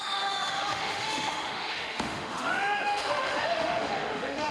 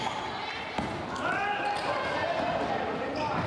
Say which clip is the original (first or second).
second